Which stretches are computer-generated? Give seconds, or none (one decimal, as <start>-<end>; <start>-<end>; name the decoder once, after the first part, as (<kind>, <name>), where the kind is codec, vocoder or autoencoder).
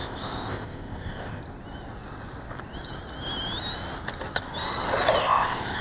0.0-1.4 (codec, ZipCodec); 5.2-5.8